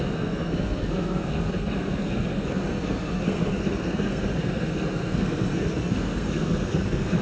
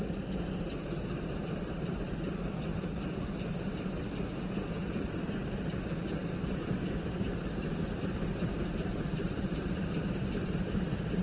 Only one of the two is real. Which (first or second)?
second